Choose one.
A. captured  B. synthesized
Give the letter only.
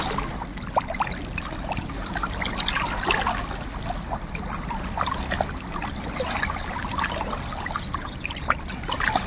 A